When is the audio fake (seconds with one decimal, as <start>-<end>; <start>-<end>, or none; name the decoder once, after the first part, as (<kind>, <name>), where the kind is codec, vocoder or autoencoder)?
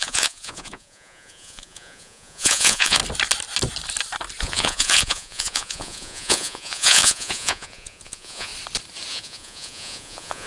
0.0-3.0 (vocoder, Vocos); 4.4-8.5; 9.1-10.5